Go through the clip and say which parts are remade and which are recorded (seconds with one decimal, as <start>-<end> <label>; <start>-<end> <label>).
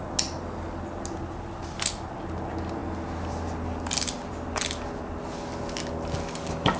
0.0-6.8 recorded